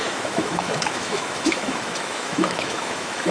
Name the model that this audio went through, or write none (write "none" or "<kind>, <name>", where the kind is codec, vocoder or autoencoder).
autoencoder, DAC-VAE